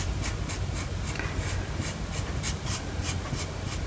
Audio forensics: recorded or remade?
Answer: recorded